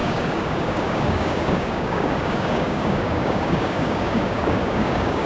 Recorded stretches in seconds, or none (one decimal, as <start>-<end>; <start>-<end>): none